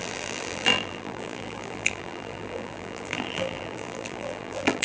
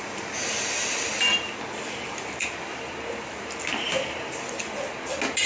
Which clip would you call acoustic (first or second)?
second